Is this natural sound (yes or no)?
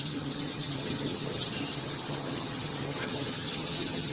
no